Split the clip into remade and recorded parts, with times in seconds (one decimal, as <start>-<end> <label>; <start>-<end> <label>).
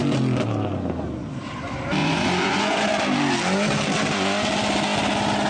0.0-2.0 recorded; 2.0-2.8 remade; 2.8-5.5 recorded